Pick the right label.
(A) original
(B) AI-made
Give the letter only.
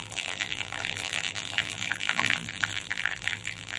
B